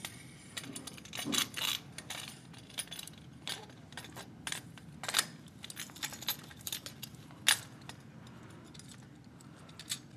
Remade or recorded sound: recorded